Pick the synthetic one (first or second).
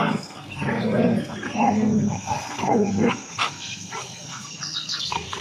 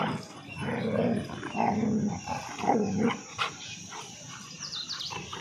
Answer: first